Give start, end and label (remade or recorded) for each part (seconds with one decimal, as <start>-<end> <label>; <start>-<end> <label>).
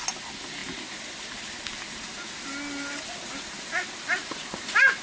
0.0-5.0 recorded